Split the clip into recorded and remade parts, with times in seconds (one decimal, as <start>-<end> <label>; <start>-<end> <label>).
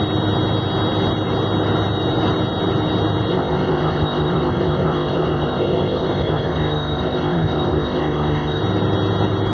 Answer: 0.0-3.3 recorded; 3.3-8.6 remade; 8.6-9.5 recorded